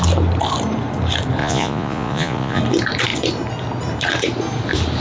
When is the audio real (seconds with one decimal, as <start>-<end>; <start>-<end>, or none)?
0.0-1.4; 2.6-5.0